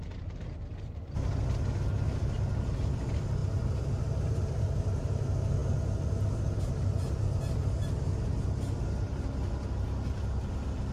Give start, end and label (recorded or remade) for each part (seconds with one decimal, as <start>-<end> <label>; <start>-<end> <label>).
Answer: 0.0-10.9 recorded